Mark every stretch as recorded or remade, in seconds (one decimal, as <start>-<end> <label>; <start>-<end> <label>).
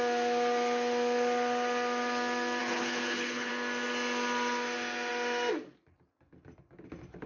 0.0-2.6 recorded; 2.6-3.5 remade; 3.5-7.3 recorded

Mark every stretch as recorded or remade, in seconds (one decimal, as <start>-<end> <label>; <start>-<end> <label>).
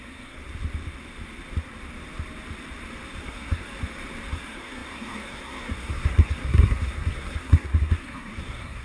0.0-0.4 remade; 0.4-3.2 recorded; 3.2-3.7 remade; 3.7-4.3 recorded; 4.3-8.8 remade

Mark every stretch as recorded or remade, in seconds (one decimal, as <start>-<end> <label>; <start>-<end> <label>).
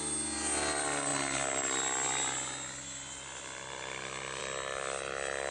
0.0-5.5 recorded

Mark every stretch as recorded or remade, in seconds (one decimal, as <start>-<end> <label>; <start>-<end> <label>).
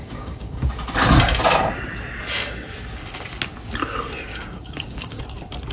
0.0-0.7 remade; 0.7-4.3 recorded; 4.3-5.2 remade; 5.2-5.7 recorded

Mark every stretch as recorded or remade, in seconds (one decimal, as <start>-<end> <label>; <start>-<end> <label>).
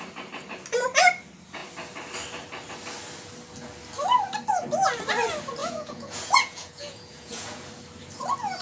0.0-5.6 recorded; 5.6-7.7 remade; 7.7-8.6 recorded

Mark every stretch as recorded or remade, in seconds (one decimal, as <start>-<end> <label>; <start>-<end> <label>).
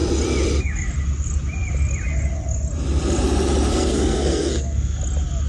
0.0-3.7 recorded; 3.7-5.0 remade; 5.0-5.5 recorded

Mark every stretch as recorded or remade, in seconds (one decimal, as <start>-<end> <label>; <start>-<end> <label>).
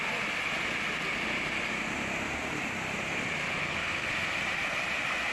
0.0-3.6 recorded; 3.6-4.1 remade; 4.1-5.3 recorded